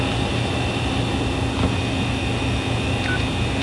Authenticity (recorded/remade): recorded